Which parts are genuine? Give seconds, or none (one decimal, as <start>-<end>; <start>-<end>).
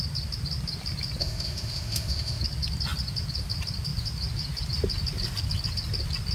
0.0-1.2; 2.4-6.3